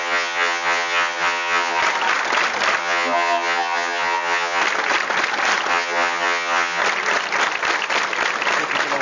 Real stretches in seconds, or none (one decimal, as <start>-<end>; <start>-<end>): 1.8-2.8; 4.6-5.7; 6.8-9.0